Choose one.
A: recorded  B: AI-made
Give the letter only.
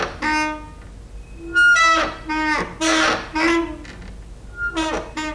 A